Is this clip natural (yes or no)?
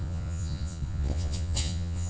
no